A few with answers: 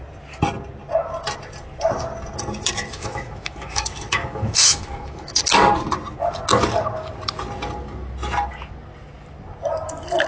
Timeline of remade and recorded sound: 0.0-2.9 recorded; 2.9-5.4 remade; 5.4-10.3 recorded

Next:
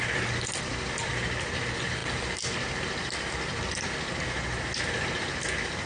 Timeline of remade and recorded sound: 0.0-5.9 recorded

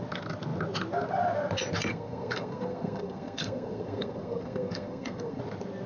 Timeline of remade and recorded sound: 0.0-1.9 recorded; 1.9-5.4 remade; 5.4-5.9 recorded

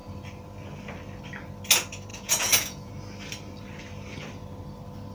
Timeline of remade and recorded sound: 0.0-2.1 recorded; 2.1-2.9 remade; 2.9-5.1 recorded

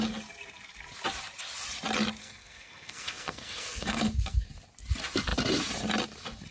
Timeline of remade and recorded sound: 0.0-2.2 recorded; 2.2-4.4 remade; 4.4-6.5 recorded